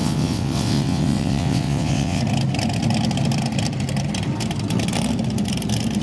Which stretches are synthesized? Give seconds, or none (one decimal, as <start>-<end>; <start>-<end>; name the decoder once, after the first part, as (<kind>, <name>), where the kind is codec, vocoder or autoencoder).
0.0-2.2 (vocoder, WaveNeXt)